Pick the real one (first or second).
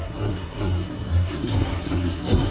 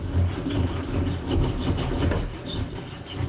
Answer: second